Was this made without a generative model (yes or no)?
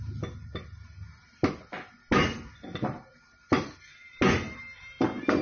yes